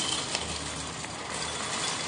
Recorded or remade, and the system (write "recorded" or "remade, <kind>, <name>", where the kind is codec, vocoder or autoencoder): recorded